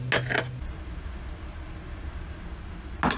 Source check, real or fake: real